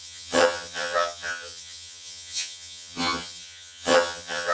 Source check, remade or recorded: remade